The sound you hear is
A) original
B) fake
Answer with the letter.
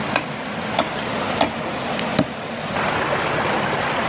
A